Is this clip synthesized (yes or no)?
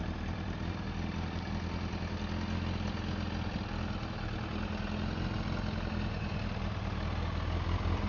no